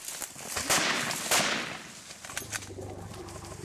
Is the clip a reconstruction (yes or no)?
no